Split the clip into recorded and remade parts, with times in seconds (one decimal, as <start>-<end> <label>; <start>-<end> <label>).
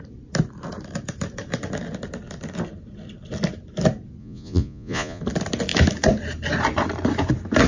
0.0-4.2 recorded; 4.2-5.2 remade; 5.2-7.7 recorded